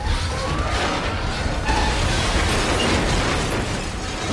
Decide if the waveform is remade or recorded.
recorded